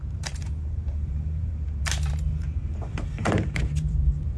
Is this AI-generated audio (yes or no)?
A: yes